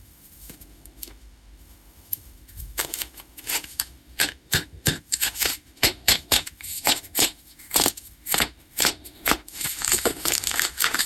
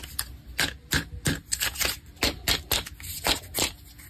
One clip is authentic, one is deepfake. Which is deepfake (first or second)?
first